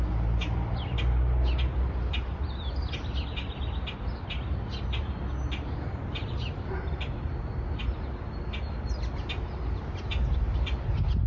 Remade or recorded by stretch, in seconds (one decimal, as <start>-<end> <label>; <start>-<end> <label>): 0.0-6.2 recorded; 6.2-7.8 remade; 7.8-11.3 recorded